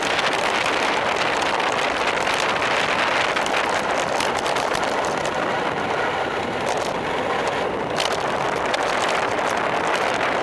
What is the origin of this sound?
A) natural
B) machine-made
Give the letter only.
B